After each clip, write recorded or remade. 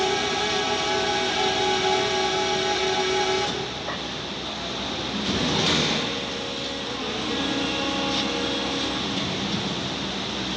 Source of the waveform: recorded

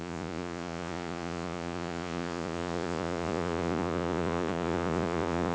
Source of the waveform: remade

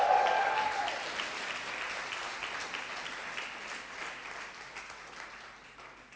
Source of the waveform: recorded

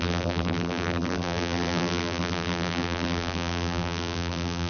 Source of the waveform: remade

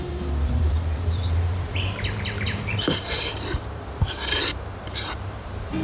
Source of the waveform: remade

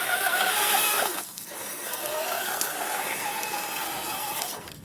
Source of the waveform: remade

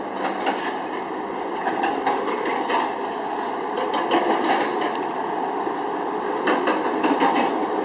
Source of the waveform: recorded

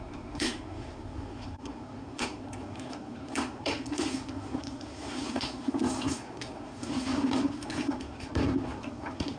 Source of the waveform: remade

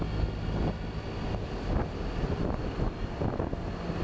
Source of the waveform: recorded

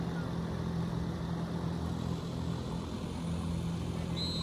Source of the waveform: recorded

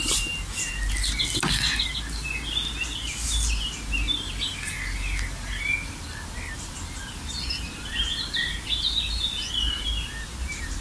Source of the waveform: recorded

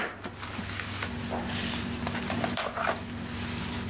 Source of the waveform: recorded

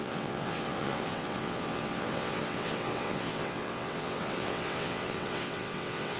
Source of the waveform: remade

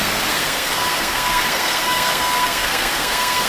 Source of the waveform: remade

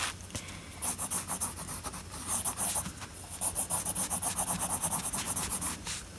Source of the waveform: recorded